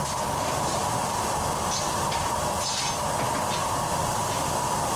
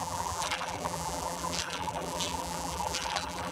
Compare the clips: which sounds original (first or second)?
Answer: first